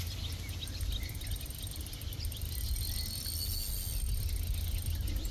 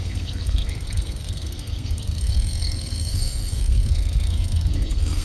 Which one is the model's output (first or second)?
second